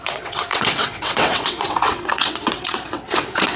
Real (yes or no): no